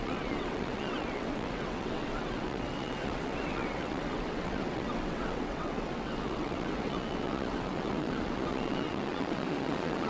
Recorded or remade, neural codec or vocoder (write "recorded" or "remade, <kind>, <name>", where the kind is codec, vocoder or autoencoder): remade, vocoder, WaveNeXt